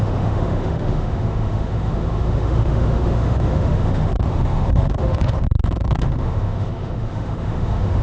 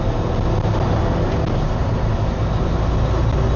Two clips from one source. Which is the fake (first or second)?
first